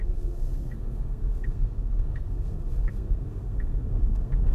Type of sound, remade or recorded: remade